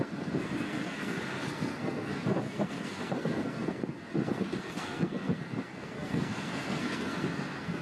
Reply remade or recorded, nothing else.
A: remade